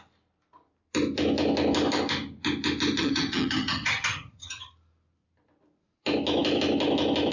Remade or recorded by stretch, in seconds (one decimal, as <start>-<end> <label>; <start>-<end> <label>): 0.0-3.0 recorded; 3.0-4.7 remade; 4.7-7.3 recorded